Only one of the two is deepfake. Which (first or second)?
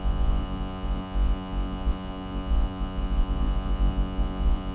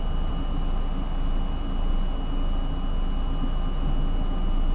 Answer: first